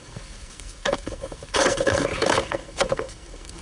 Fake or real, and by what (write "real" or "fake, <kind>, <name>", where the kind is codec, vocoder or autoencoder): fake, codec, SNAC